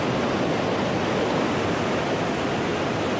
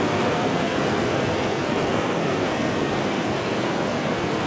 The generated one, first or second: second